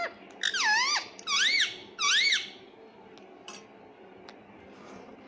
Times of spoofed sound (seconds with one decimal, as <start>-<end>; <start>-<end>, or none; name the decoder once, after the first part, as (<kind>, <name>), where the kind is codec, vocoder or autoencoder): none